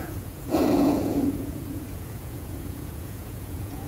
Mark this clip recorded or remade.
remade